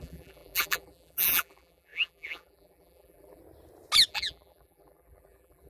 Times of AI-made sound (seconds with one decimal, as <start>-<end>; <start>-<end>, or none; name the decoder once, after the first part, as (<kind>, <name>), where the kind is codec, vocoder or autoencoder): 0.0-3.4 (vocoder, BigVGAN v2); 4.1-5.7